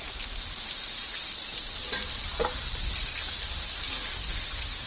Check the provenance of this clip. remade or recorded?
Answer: recorded